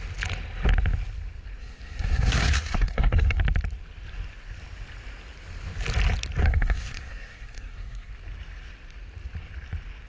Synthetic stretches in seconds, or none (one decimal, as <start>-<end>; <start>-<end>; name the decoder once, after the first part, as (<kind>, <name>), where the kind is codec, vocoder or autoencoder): 1.6-3.4 (codec, SNAC); 6.4-8.1